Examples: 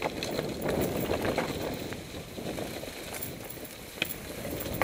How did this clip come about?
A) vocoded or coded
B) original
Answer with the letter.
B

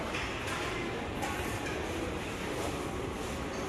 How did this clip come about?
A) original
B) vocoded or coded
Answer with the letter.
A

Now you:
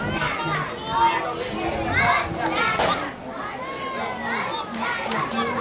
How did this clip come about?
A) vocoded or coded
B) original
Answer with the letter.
B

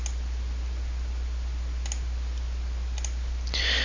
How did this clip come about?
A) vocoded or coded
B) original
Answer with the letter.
B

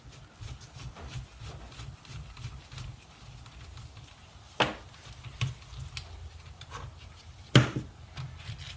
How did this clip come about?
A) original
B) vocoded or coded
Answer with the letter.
A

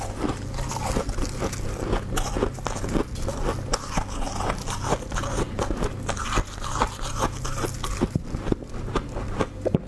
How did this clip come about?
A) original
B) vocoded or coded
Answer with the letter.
A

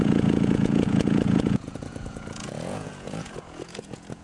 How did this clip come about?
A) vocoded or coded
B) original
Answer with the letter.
A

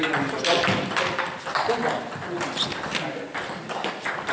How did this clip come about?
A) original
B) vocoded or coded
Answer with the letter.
A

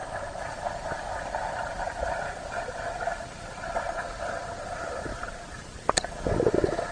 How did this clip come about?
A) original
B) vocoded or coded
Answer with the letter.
A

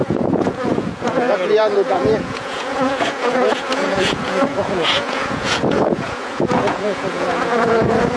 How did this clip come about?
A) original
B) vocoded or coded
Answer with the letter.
B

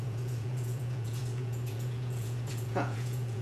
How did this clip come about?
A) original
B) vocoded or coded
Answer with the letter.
B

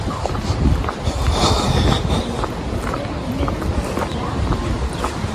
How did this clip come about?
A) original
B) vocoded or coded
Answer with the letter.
A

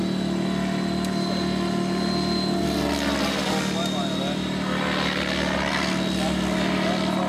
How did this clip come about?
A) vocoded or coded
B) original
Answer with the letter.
B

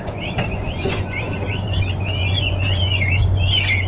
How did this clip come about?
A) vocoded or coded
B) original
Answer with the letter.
A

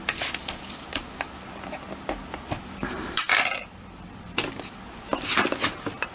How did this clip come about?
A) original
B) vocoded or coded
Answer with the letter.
A